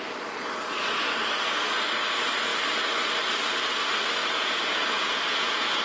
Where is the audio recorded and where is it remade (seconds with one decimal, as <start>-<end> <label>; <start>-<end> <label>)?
0.0-4.2 recorded; 4.2-5.8 remade